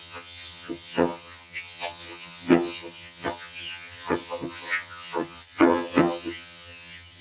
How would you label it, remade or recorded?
remade